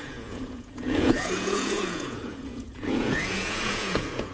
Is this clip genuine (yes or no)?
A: no